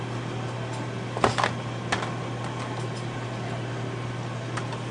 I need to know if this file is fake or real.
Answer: real